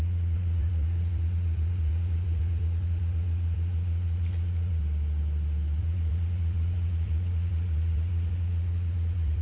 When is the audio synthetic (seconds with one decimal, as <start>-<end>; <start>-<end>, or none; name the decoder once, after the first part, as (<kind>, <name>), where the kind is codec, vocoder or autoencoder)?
0.0-4.8 (vocoder, Vocos); 5.8-9.4